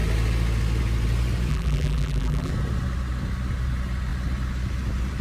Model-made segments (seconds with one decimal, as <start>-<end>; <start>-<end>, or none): 1.5-2.5